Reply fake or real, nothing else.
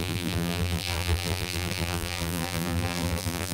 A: fake